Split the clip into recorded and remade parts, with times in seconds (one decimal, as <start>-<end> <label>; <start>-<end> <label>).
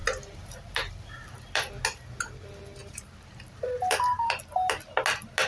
0.0-1.7 remade; 1.7-2.8 recorded; 2.8-4.4 remade; 4.4-5.5 recorded